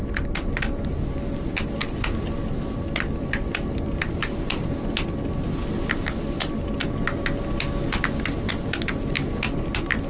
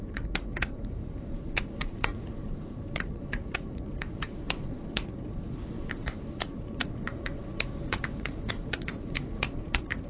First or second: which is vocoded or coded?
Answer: second